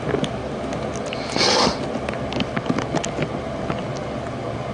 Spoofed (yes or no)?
no